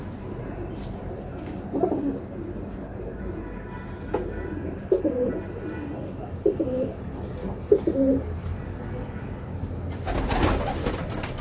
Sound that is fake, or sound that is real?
real